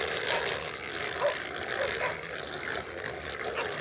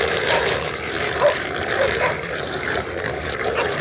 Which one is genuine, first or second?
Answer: first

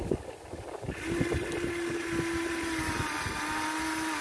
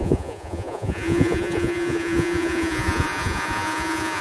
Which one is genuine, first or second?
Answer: first